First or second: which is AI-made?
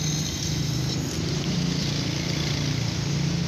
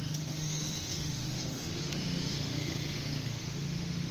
second